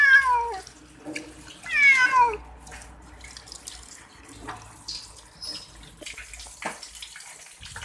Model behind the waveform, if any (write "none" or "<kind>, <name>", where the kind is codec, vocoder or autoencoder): none